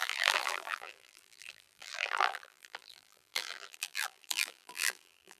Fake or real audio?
fake